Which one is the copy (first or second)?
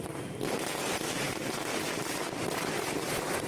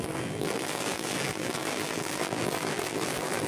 second